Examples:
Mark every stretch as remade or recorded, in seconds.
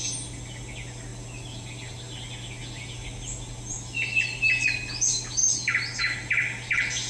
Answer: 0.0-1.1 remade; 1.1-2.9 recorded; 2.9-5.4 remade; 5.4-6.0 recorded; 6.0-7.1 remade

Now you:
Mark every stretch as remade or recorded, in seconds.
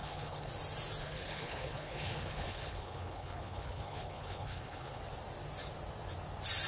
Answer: 0.0-0.5 remade; 0.5-1.0 recorded; 1.0-5.0 remade; 5.0-6.7 recorded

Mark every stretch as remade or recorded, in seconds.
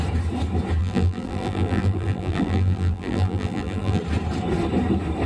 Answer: 0.0-0.8 recorded; 0.8-4.0 remade; 4.0-5.3 recorded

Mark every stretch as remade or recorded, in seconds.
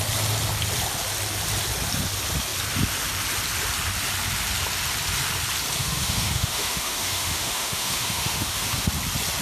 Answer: 0.0-5.8 recorded; 5.8-8.9 remade; 8.9-9.4 recorded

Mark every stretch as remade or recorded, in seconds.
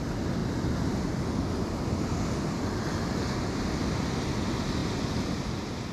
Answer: 0.0-5.9 recorded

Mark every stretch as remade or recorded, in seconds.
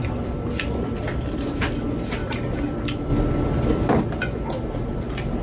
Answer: 0.0-5.4 recorded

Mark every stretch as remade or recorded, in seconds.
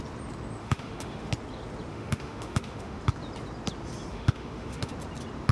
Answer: 0.0-0.6 recorded; 0.6-1.3 remade; 1.3-1.9 recorded; 1.9-3.0 remade; 3.0-4.1 recorded; 4.1-4.9 remade; 4.9-5.5 recorded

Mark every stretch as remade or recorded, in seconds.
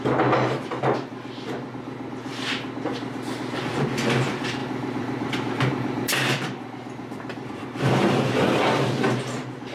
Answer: 0.0-4.6 recorded; 4.6-8.6 remade; 8.6-9.7 recorded